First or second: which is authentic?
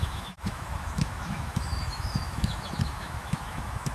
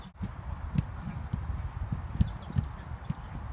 second